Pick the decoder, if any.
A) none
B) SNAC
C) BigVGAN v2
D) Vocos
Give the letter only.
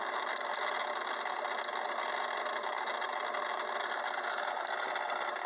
A